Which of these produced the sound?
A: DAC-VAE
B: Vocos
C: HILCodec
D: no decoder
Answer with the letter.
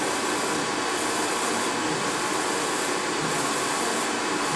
D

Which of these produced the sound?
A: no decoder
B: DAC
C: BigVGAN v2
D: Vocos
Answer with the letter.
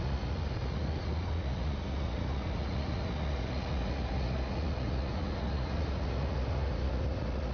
D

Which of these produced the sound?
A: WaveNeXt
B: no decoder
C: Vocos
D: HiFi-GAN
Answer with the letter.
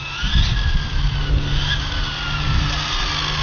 B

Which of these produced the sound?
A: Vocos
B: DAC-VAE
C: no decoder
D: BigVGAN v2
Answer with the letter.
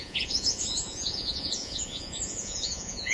A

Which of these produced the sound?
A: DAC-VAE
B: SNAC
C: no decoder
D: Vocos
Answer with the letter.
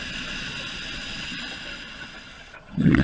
D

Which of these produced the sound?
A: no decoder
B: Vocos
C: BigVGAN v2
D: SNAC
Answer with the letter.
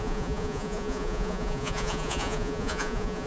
B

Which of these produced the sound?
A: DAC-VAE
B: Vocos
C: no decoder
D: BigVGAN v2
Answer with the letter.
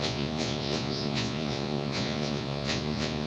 B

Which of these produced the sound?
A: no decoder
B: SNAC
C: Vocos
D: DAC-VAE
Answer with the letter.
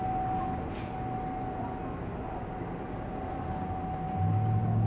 A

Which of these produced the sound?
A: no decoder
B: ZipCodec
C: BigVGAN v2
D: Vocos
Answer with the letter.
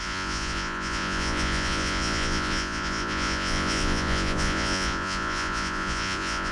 D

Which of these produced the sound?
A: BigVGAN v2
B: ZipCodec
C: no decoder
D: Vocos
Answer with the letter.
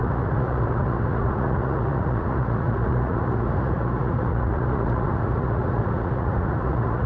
D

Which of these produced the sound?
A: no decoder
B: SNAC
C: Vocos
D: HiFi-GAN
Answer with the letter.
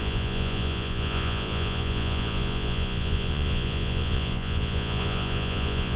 C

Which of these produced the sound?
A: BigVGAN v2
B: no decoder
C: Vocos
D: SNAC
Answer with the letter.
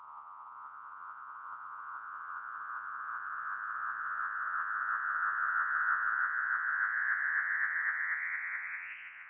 C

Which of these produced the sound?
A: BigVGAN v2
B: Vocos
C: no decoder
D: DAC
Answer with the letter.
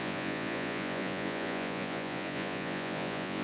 B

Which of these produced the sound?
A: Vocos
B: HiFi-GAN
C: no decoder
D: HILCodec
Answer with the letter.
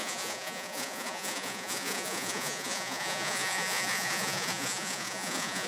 A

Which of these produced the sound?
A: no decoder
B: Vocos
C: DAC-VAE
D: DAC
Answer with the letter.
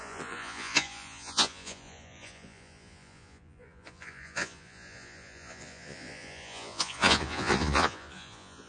B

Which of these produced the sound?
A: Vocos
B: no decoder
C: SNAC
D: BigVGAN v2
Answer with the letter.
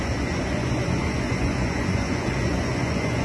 A